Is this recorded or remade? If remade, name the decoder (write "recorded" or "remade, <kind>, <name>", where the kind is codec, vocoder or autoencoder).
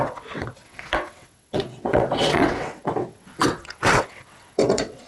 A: remade, vocoder, WaveNeXt